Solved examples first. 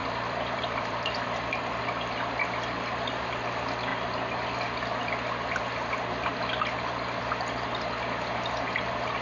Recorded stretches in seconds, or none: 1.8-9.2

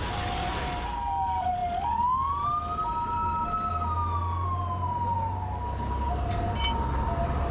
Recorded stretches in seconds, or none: 0.0-7.5

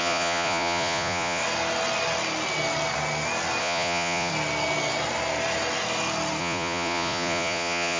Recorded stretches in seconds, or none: 1.4-3.6; 4.3-6.4

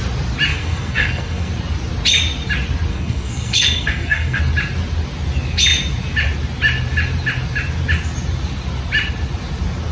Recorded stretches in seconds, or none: 0.0-0.5; 1.5-2.9; 4.4-9.9

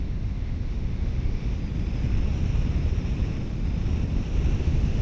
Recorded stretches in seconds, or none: 1.6-4.6

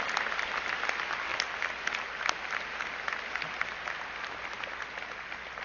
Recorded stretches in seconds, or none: 0.0-5.6

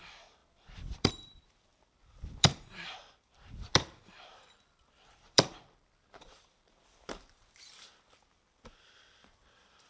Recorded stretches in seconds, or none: none